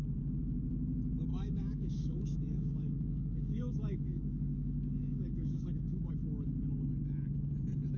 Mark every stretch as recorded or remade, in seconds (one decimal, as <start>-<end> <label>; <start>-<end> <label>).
0.0-1.3 recorded; 1.3-6.1 remade; 6.1-8.0 recorded